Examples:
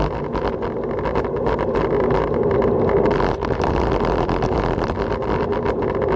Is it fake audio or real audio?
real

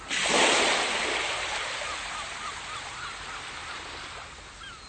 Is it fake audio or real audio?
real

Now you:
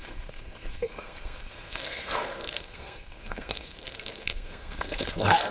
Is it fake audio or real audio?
fake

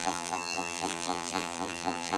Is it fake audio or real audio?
fake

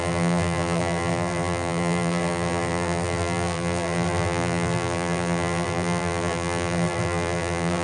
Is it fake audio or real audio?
fake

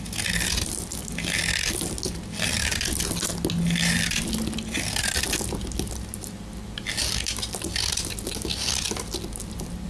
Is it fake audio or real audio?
real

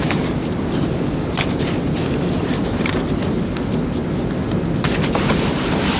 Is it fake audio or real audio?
real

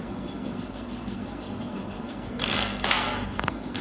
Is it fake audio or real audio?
fake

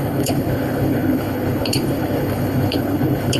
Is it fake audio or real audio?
fake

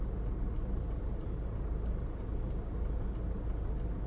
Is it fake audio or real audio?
real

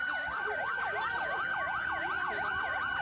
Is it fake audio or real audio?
real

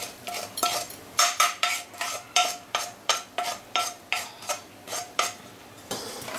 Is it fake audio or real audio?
fake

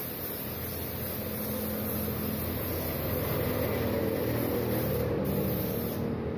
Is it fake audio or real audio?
real